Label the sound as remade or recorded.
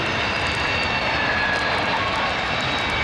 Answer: recorded